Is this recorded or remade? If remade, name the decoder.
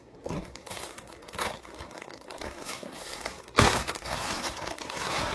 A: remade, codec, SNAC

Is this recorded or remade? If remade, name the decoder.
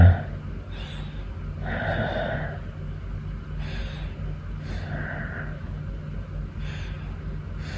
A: recorded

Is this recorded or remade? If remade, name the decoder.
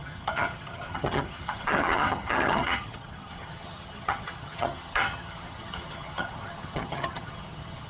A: remade, vocoder, HiFi-GAN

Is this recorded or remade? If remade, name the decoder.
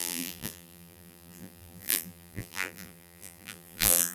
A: remade, vocoder, BigVGAN v2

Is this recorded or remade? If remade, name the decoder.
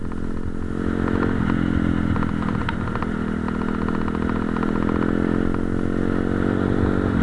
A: recorded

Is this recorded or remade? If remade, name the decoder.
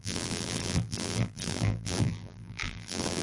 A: remade, vocoder, BigVGAN v2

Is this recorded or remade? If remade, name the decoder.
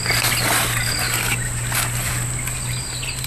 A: recorded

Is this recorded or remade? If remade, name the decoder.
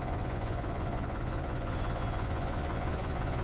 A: remade, vocoder, Vocos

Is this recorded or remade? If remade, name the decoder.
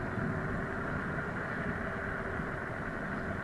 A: recorded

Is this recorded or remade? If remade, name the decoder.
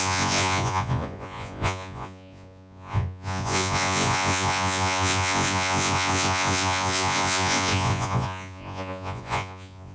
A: remade, vocoder, Vocos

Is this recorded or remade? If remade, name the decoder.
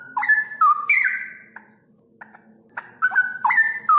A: recorded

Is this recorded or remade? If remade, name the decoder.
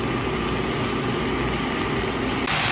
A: recorded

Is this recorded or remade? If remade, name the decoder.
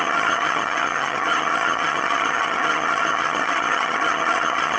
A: remade, vocoder, HiFi-GAN